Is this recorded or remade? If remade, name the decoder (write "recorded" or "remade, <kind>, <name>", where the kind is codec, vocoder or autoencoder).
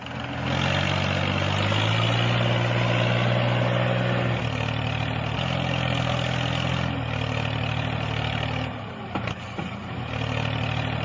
recorded